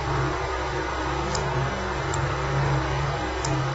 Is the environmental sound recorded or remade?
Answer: recorded